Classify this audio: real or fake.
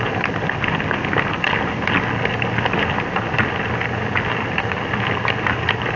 real